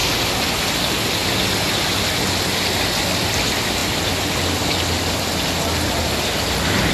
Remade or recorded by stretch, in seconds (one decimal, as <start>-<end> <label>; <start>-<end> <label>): 0.0-6.9 recorded